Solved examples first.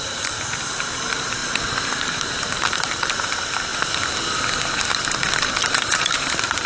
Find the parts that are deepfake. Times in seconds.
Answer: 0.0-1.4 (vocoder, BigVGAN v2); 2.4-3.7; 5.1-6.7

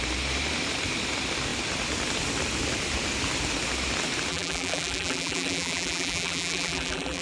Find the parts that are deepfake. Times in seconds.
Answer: 4.3-7.2 (vocoder, BigVGAN v2)

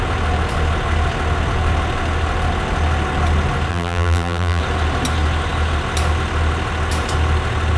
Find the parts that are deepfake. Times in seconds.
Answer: 3.7-4.6 (vocoder, BigVGAN v2)

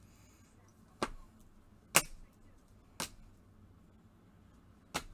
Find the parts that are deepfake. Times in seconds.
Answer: none

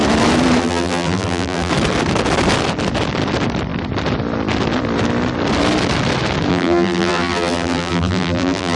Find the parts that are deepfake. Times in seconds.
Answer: 0.6-1.7 (vocoder, BigVGAN v2); 6.5-8.8

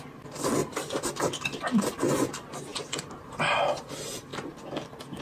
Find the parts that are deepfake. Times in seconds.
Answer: 0.0-2.7 (vocoder, BigVGAN v2); 3.9-4.3

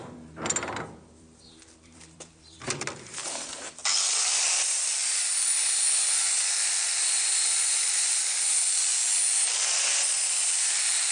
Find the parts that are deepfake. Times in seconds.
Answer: 0.0-8.9 (vocoder, BigVGAN v2); 10.2-11.1

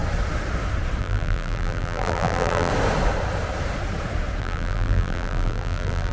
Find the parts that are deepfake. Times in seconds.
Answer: 1.0-2.7 (vocoder, BigVGAN v2); 4.4-6.1